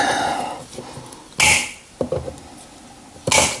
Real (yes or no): yes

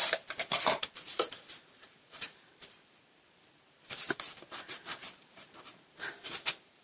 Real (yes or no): no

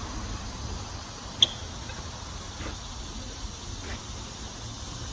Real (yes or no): yes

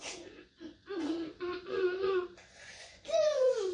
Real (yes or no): no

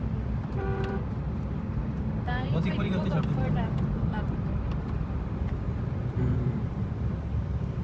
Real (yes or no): no